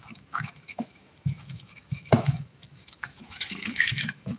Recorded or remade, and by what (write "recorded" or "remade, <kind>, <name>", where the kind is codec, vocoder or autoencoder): remade, autoencoder, DAC-VAE